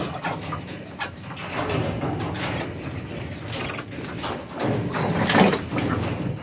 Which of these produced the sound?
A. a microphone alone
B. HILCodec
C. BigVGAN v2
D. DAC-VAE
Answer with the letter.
A